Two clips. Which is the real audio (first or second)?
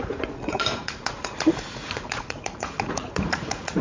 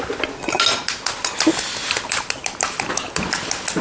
second